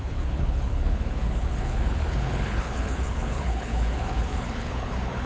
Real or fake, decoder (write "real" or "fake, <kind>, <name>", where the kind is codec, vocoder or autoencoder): fake, codec, HILCodec